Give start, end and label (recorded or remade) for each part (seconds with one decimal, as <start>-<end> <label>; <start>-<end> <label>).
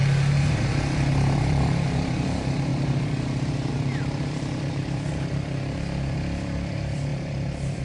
0.0-7.8 remade